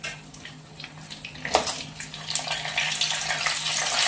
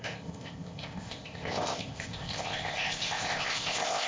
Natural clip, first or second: first